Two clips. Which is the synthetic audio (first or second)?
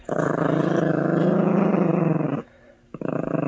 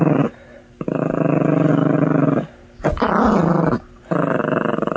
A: first